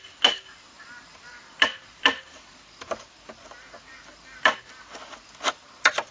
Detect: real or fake real